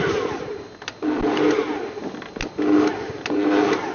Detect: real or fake real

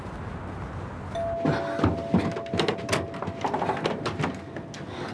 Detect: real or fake real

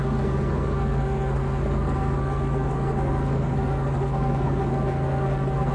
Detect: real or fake fake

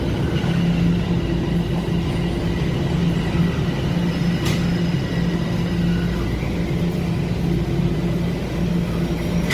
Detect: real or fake real